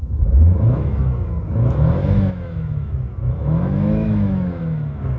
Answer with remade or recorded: remade